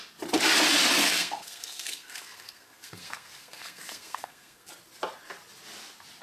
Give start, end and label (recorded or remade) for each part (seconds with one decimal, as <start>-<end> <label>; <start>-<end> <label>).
0.0-1.0 recorded; 1.0-4.7 remade; 4.7-6.2 recorded

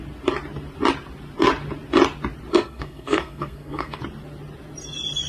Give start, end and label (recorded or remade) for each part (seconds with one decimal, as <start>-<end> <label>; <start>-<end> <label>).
0.0-2.5 recorded; 2.5-4.0 remade; 4.0-5.3 recorded